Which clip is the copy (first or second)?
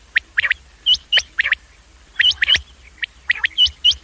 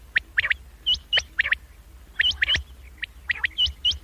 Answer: first